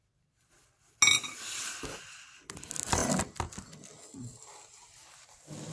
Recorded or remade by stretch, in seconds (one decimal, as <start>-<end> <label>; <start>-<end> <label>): 0.0-5.7 recorded